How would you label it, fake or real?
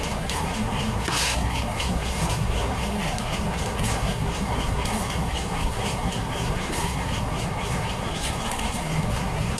fake